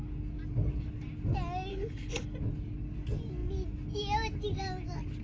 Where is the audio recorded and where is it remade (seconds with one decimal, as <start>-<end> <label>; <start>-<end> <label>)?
0.0-1.7 recorded; 1.7-2.2 remade; 2.2-5.2 recorded